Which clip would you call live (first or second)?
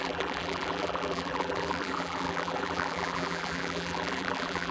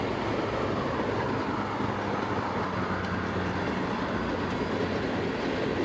second